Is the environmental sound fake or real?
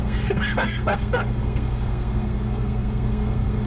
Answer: fake